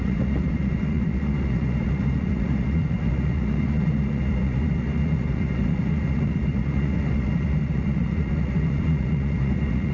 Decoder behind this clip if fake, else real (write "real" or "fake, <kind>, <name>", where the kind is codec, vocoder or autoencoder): fake, vocoder, Vocos